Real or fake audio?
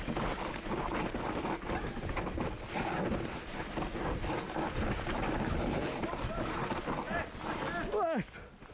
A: real